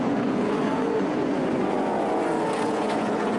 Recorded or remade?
remade